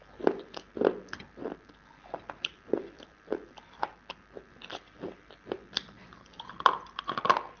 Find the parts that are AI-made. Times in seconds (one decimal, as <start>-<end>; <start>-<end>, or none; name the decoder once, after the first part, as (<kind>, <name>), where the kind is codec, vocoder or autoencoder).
1.4-2.1 (vocoder, BigVGAN v2); 2.5-5.3; 6.0-6.5